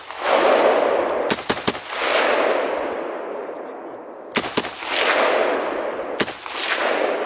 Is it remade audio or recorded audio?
recorded